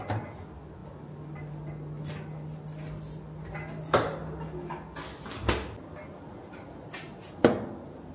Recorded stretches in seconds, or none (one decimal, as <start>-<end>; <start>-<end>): 0.0-4.2; 4.7-8.1